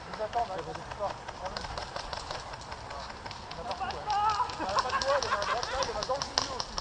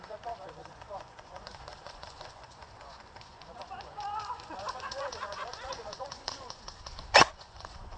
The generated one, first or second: second